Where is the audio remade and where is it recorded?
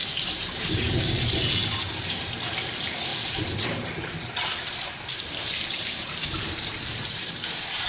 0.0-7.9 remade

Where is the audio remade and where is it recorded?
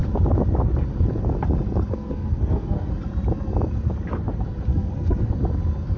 0.0-1.9 recorded; 1.9-2.9 remade; 2.9-4.7 recorded; 4.7-5.3 remade; 5.3-6.0 recorded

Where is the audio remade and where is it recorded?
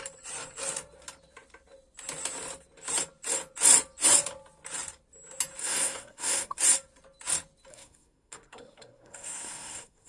0.0-5.6 recorded; 5.6-6.6 remade; 6.6-7.7 recorded; 7.7-10.1 remade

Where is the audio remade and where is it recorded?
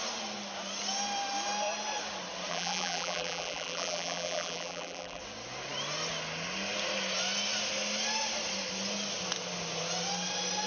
0.0-2.5 recorded; 2.5-5.2 remade; 5.2-10.7 recorded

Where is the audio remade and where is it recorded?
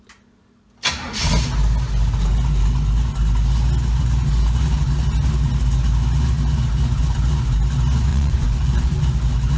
0.0-8.1 recorded; 8.1-9.0 remade; 9.0-9.6 recorded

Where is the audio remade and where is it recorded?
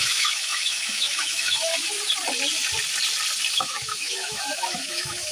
0.0-1.7 remade; 1.7-3.5 recorded; 3.5-5.3 remade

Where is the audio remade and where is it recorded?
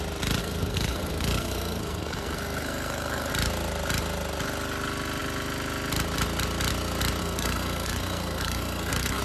0.0-0.4 recorded; 0.4-3.3 remade; 3.3-7.2 recorded; 7.2-9.2 remade